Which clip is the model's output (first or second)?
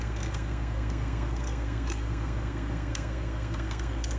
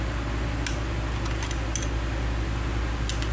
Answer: first